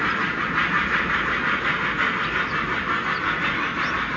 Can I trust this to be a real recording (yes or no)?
yes